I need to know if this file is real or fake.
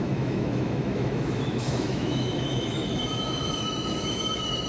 fake